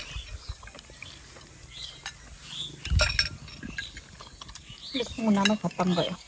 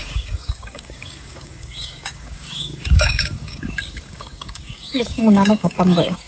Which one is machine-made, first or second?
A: second